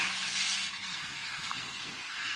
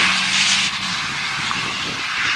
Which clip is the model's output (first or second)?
first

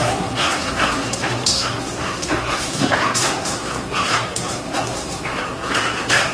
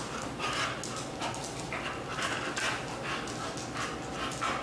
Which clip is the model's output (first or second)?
first